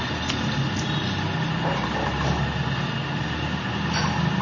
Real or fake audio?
real